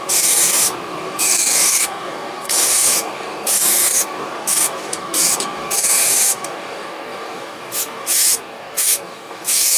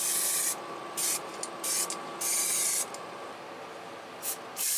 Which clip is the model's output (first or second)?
first